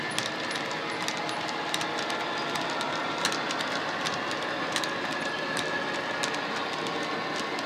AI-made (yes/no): no